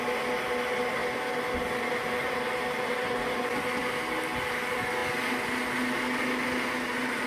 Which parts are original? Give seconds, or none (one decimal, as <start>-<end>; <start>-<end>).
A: 0.0-7.3